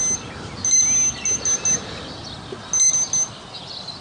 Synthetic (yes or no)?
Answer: no